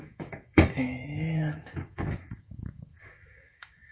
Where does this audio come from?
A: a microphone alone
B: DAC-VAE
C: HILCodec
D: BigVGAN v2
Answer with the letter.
B